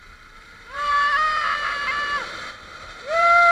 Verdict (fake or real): fake